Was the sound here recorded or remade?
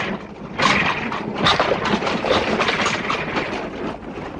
remade